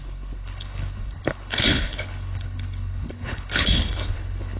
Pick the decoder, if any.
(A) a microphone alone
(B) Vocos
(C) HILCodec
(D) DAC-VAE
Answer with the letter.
C